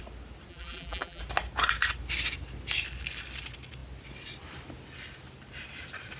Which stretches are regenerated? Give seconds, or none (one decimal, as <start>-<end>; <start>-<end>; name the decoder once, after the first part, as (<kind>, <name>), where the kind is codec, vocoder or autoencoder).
0.5-1.2 (vocoder, BigVGAN v2)